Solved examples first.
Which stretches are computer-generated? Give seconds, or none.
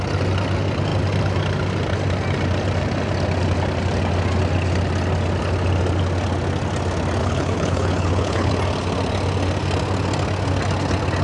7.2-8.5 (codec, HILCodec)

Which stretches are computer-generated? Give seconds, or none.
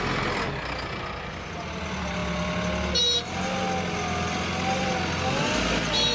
none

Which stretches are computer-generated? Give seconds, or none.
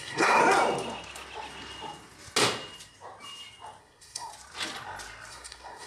0.0-0.4 (codec, SNAC); 3.8-4.3; 5.3-5.9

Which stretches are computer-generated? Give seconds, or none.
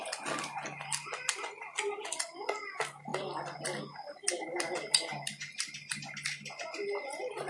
none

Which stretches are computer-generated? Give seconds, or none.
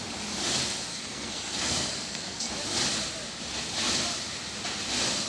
0.9-2.5 (codec, SNAC)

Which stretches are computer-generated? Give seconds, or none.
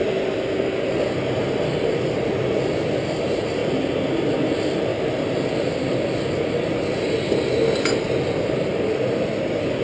none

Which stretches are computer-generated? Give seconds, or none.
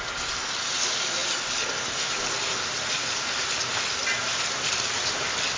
none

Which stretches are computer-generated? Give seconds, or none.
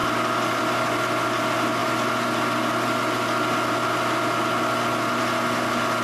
none